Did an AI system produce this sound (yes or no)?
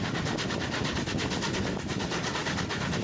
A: no